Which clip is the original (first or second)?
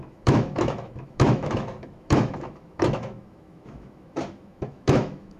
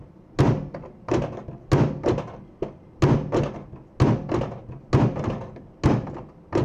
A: second